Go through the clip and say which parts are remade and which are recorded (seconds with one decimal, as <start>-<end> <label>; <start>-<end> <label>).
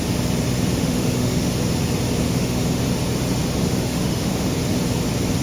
0.0-0.8 recorded; 0.8-1.5 remade; 1.5-2.2 recorded; 2.2-2.8 remade; 2.8-3.6 recorded; 3.6-4.5 remade; 4.5-5.4 recorded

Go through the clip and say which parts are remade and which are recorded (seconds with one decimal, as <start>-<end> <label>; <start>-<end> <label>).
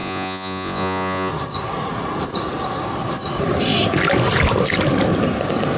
0.0-1.3 remade; 1.3-5.8 recorded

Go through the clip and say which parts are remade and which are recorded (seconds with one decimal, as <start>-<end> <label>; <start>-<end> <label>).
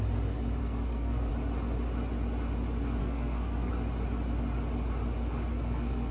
0.0-0.6 recorded; 0.6-1.3 remade; 1.3-3.0 recorded; 3.0-3.7 remade; 3.7-5.5 recorded; 5.5-6.1 remade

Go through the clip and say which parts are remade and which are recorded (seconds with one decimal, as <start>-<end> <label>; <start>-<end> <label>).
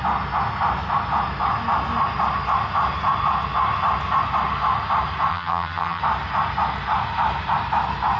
0.0-5.3 recorded; 5.3-6.0 remade; 6.0-8.2 recorded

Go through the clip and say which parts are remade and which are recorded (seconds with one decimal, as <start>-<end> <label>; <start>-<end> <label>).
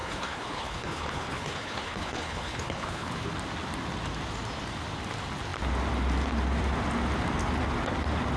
0.0-3.3 remade; 3.3-8.4 recorded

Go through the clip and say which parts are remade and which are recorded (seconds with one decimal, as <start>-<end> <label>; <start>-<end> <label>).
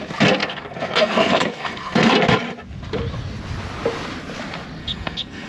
0.0-0.4 recorded; 0.4-2.1 remade; 2.1-4.8 recorded; 4.8-5.5 remade